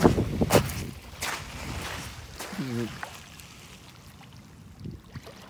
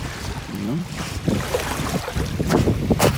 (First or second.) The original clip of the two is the first